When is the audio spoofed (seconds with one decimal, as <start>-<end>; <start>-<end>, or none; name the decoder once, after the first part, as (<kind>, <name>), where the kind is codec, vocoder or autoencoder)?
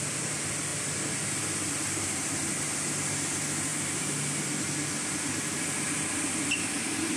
none